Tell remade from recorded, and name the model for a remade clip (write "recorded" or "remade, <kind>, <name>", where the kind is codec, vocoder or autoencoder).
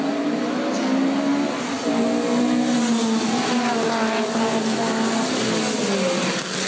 recorded